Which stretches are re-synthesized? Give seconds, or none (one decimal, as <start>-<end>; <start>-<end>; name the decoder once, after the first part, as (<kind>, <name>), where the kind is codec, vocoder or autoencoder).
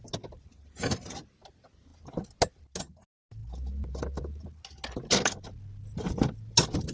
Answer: none